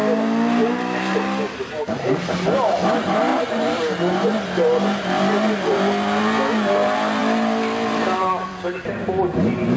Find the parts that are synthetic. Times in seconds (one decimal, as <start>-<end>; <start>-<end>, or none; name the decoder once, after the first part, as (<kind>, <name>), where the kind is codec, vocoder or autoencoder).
0.6-2.3 (vocoder, BigVGAN v2); 3.3-5.7